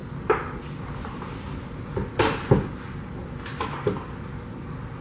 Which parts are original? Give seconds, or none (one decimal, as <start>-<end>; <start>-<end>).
0.0-2.2